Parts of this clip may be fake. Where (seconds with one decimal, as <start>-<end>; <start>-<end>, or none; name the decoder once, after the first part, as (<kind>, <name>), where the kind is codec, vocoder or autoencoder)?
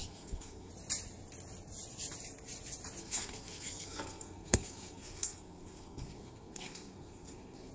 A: 0.0-0.7 (codec, SNAC); 3.0-7.7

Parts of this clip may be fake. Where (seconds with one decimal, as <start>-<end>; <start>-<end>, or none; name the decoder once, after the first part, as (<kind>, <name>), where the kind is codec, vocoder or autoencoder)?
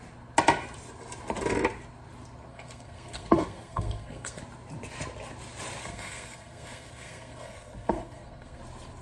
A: 2.5-4.4 (codec, SNAC); 5.8-8.6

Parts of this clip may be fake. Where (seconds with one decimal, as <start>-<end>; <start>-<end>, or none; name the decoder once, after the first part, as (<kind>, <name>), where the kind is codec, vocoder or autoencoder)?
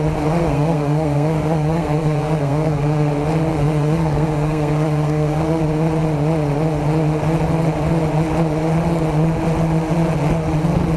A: 0.4-3.1 (codec, SNAC); 3.5-5.6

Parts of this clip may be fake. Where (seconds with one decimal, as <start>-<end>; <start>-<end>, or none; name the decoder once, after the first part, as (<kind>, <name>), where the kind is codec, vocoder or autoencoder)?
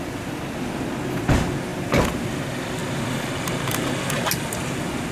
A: none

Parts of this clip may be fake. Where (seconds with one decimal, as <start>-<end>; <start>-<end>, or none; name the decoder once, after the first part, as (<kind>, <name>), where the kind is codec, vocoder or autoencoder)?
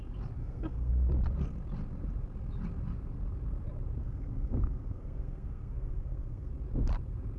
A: 0.4-0.9 (codec, SNAC); 4.0-6.5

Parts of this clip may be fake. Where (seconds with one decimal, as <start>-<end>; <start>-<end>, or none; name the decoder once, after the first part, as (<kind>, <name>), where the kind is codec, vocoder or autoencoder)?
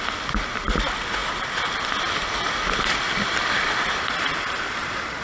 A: none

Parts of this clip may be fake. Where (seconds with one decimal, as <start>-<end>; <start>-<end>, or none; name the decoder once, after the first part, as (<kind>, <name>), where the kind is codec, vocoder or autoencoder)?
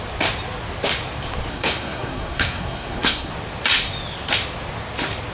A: 1.5-3.3 (codec, SNAC)